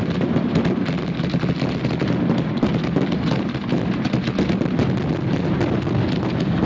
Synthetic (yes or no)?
no